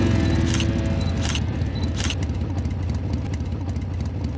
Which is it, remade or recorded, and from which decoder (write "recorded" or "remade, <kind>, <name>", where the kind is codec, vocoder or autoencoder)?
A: recorded